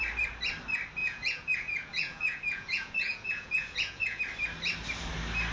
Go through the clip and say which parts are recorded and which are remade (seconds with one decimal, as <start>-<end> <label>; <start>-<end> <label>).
0.0-1.0 recorded; 1.0-4.2 remade; 4.2-5.5 recorded